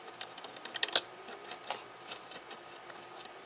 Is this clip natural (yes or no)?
yes